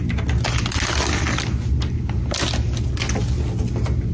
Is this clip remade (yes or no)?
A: no